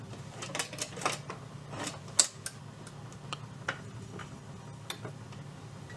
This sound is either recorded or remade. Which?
recorded